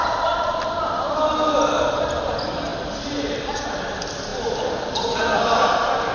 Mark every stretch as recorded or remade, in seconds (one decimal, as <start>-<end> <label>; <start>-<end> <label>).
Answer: 0.0-6.1 recorded